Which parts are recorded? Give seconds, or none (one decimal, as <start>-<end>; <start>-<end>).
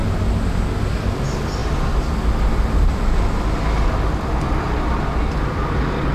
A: 0.0-6.1